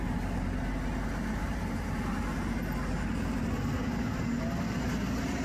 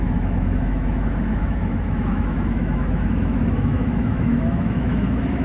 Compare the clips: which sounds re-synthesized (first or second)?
second